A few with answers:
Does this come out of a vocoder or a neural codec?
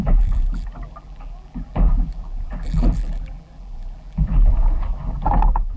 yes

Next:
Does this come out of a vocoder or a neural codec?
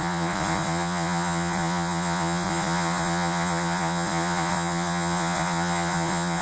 yes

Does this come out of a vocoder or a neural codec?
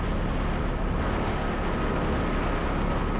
no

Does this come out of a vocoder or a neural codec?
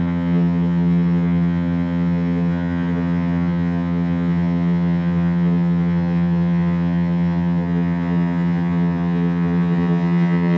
yes